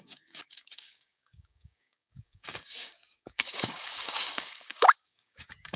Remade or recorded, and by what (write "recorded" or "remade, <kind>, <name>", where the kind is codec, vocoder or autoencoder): remade, codec, DAC